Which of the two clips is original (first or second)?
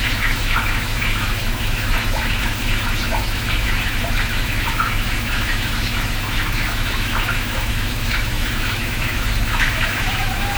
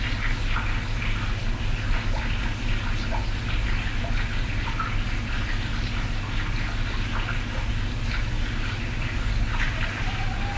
second